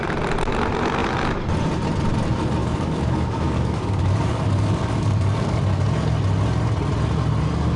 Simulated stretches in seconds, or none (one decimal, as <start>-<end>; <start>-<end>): 2.6-5.6